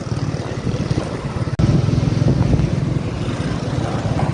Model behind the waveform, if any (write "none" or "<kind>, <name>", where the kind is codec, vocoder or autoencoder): none